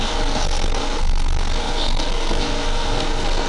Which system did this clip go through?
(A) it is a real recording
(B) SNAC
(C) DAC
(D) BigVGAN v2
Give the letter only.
B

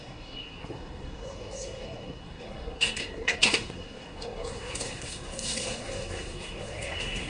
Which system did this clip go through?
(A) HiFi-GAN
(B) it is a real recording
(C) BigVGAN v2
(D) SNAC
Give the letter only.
D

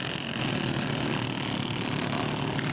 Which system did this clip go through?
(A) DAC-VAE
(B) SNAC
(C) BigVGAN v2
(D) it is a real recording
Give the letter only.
D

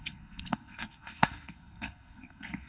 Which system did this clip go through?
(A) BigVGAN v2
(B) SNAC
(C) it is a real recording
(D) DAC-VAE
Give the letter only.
B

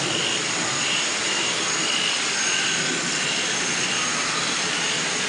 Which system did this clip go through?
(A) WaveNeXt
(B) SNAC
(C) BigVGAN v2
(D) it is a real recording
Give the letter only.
D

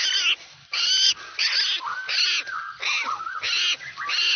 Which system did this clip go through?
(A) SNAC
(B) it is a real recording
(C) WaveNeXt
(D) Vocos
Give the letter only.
B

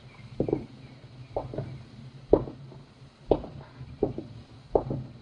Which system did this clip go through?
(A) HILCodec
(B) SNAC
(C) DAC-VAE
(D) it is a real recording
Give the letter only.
D